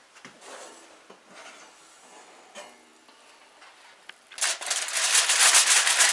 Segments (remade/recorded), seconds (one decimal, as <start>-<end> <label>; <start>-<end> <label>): 0.0-6.1 recorded

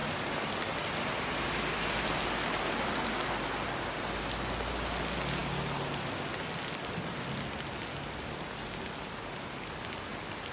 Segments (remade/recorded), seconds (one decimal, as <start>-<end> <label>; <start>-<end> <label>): 0.0-10.5 recorded

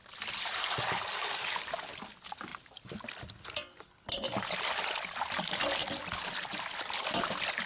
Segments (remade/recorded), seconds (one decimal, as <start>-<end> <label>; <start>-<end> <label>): 0.0-2.5 recorded; 2.5-3.0 remade; 3.0-5.8 recorded; 5.8-7.1 remade; 7.1-7.7 recorded

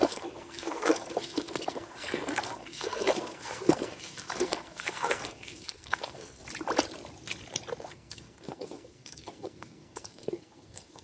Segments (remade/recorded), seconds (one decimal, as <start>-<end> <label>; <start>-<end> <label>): 0.0-6.4 remade; 6.4-7.8 recorded; 7.8-11.0 remade